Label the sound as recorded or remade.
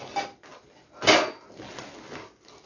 recorded